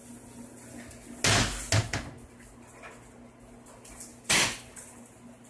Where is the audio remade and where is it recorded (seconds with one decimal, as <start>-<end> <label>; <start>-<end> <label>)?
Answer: 0.0-4.1 recorded; 4.1-4.9 remade; 4.9-5.5 recorded